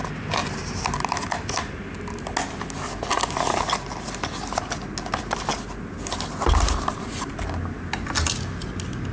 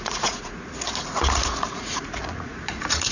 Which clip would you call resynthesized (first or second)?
second